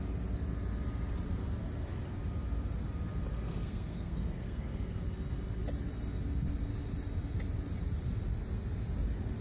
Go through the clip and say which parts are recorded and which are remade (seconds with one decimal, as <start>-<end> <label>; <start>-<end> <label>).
0.0-3.3 recorded; 3.3-5.0 remade; 5.0-9.4 recorded